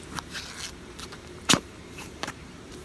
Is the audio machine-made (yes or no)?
yes